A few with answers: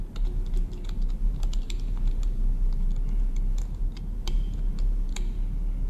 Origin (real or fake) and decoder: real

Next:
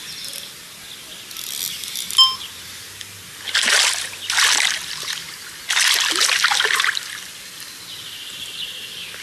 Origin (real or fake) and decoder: real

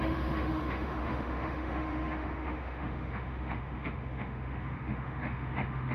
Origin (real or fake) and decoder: fake, autoencoder, DAC-VAE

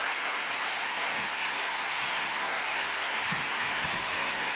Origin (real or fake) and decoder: fake, codec, SNAC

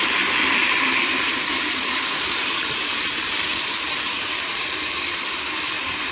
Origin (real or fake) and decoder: fake, vocoder, BigVGAN v2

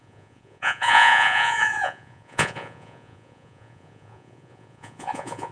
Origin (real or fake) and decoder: fake, vocoder, Vocos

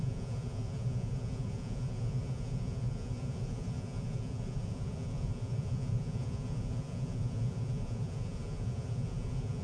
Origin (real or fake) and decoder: fake, vocoder, Vocos